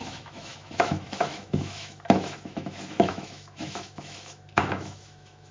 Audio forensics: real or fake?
fake